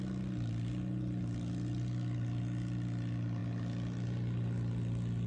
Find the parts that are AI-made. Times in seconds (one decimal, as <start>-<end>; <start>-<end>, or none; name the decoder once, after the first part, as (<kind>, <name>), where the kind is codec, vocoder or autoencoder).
none